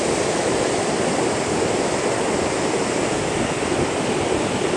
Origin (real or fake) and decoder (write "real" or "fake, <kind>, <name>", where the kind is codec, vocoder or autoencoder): real